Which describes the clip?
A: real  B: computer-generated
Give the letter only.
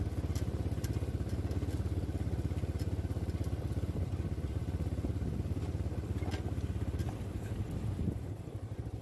A